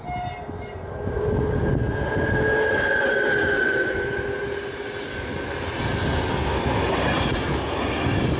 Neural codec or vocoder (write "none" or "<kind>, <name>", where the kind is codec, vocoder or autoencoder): none